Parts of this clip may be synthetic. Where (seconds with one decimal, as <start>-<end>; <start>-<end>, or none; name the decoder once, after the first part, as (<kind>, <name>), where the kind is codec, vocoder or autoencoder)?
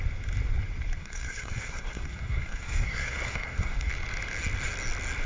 1.0-3.9 (codec, SNAC)